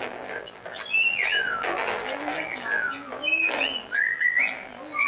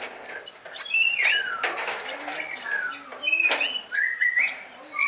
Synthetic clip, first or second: first